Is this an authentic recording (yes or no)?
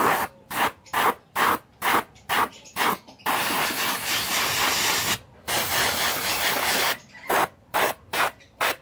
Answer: yes